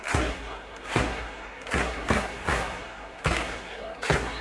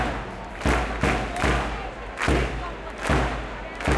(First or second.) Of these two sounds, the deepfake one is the first